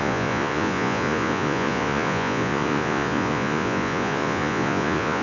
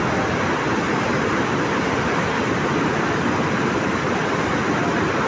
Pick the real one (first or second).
second